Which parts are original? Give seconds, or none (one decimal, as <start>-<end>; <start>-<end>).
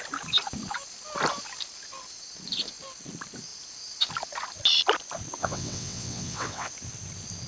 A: 0.0-5.4; 6.7-7.5